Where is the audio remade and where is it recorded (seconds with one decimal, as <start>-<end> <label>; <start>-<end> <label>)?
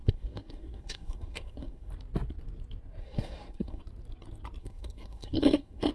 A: 0.0-1.9 remade; 1.9-3.0 recorded; 3.0-3.8 remade; 3.8-4.6 recorded; 4.6-5.9 remade